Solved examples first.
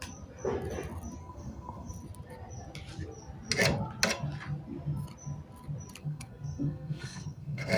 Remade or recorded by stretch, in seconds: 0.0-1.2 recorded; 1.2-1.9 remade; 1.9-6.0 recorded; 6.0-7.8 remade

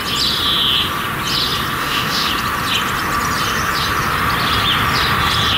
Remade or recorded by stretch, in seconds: 0.0-1.8 recorded; 1.8-2.3 remade; 2.3-5.6 recorded